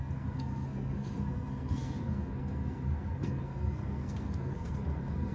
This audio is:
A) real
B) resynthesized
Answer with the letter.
B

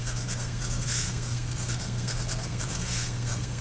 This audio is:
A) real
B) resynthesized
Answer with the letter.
B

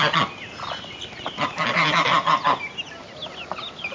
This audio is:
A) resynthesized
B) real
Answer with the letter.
B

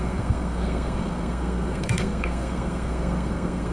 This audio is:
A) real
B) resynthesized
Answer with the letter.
B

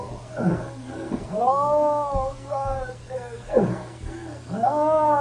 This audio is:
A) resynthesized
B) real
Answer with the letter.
A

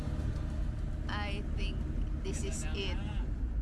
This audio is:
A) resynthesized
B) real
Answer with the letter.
B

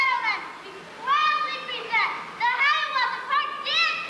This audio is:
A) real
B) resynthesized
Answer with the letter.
A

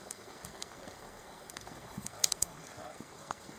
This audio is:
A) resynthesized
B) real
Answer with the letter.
A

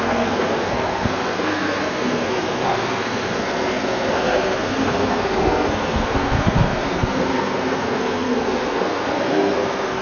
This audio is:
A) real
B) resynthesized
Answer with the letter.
B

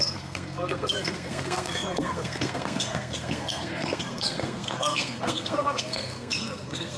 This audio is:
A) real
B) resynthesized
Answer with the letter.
B